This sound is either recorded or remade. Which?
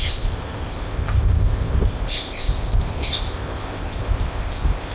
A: remade